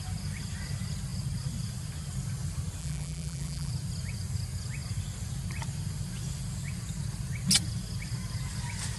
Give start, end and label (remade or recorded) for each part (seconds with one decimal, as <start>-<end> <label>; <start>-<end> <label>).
0.0-2.8 recorded; 2.8-3.7 remade; 3.7-9.0 recorded